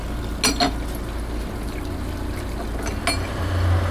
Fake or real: real